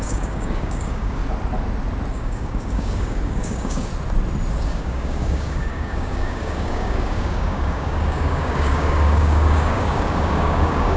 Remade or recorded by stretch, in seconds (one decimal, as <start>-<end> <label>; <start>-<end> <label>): 0.0-1.2 remade; 1.2-2.1 recorded; 2.1-3.9 remade; 3.9-4.5 recorded; 4.5-11.0 remade